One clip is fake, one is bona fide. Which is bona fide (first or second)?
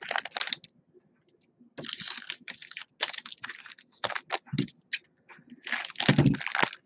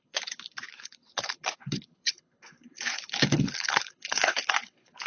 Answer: first